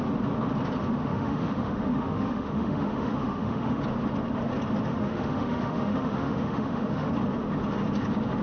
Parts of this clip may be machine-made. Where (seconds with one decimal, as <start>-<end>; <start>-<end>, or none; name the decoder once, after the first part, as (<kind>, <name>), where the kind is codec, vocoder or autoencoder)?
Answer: 1.0-3.8 (autoencoder, DAC-VAE); 4.9-7.1

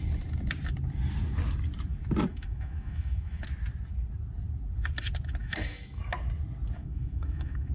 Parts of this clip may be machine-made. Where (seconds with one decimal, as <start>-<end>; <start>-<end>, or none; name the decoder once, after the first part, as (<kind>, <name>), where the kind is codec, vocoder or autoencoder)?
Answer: 2.3-3.4 (autoencoder, DAC-VAE); 5.4-6.0; 6.8-7.7

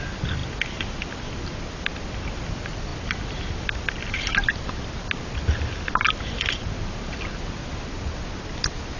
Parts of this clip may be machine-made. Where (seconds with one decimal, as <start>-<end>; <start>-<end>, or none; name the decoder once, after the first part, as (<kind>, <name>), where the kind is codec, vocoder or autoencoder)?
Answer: none

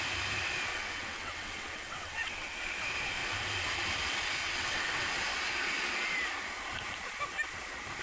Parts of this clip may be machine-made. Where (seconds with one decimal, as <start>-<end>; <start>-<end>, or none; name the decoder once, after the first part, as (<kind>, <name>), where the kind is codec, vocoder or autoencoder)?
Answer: 0.7-2.6 (vocoder, WaveNeXt); 4.4-5.0

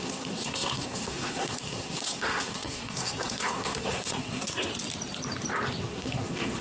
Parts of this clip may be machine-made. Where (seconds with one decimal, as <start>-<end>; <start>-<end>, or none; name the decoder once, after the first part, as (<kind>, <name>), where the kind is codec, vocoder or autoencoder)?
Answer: 0.0-4.7 (codec, SNAC); 5.8-6.6

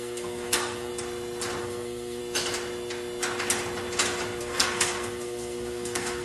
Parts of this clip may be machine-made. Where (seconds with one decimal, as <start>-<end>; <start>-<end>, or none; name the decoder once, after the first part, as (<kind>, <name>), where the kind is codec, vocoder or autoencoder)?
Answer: 0.0-0.9 (codec, SNAC); 1.6-2.2; 4.4-6.2

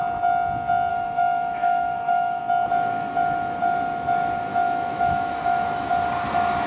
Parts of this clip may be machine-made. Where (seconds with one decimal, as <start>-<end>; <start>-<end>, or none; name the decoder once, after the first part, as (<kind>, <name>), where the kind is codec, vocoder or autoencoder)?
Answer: 0.9-2.4 (autoencoder, DAC-VAE); 4.5-5.9

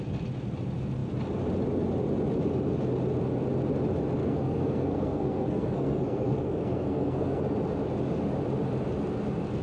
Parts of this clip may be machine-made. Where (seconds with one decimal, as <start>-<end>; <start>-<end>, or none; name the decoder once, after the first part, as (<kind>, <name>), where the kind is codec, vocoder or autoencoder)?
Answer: 4.2-7.4 (codec, SNAC)